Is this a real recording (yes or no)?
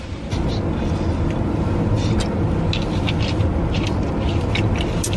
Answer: yes